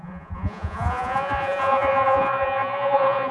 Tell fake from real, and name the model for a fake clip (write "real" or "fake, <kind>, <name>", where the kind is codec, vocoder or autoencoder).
fake, vocoder, Vocos